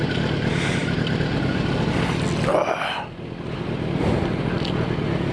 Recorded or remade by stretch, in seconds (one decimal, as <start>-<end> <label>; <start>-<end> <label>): 0.0-5.3 recorded